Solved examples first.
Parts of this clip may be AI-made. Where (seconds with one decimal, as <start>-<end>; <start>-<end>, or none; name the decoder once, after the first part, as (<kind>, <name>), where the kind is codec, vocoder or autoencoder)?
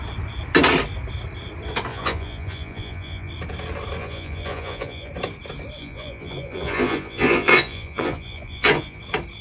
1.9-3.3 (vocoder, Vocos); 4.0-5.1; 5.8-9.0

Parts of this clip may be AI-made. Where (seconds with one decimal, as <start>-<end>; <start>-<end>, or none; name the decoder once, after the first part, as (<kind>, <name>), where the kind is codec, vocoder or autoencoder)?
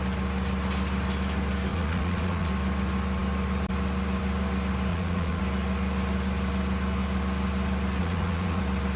1.7-2.5 (vocoder, Vocos); 4.9-5.4; 8.0-8.6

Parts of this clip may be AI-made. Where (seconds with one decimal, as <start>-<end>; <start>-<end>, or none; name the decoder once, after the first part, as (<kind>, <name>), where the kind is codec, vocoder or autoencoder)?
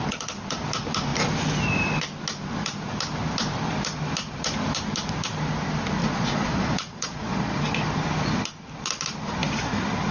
6.0-7.6 (vocoder, Vocos)